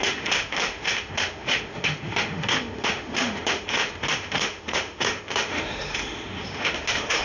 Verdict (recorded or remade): remade